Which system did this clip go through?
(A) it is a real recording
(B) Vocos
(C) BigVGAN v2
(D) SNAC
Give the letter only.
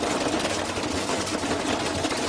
A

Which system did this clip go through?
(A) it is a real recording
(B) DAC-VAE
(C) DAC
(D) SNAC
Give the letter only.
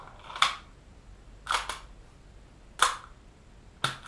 A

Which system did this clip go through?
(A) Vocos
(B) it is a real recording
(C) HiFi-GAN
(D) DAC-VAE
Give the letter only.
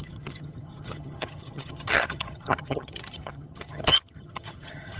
C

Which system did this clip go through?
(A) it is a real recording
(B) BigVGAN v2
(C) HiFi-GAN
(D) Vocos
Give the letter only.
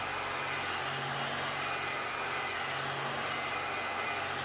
A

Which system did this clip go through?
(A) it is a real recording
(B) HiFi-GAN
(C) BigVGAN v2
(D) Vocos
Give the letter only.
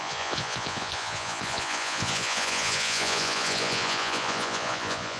D